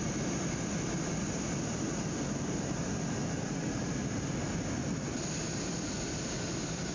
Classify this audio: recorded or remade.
recorded